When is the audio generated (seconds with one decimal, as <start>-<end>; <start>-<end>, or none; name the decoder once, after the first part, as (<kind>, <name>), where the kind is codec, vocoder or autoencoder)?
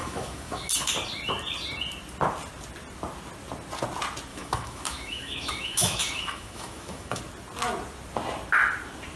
0.0-0.7 (autoencoder, DAC-VAE); 4.3-7.2